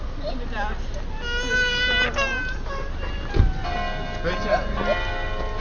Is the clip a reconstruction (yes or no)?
no